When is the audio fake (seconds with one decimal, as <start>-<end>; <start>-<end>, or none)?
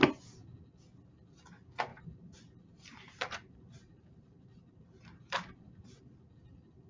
1.9-6.0